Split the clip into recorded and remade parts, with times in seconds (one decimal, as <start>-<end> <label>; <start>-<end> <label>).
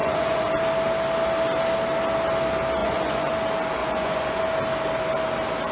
0.0-0.5 remade; 0.5-2.8 recorded; 2.8-3.3 remade; 3.3-3.8 recorded; 3.8-4.4 remade; 4.4-5.7 recorded